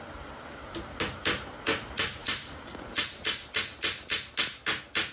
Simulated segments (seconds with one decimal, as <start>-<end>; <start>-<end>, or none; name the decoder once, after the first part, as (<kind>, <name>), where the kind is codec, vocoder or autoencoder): 2.2-2.8 (vocoder, BigVGAN v2)